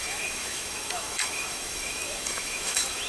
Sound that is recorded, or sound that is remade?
remade